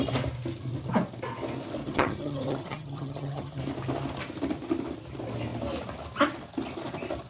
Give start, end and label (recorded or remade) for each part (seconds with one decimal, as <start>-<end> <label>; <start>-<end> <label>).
0.0-1.8 recorded; 1.8-3.6 remade; 3.6-7.3 recorded